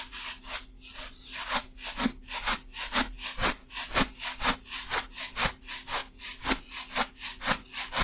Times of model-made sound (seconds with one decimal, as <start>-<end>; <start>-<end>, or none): none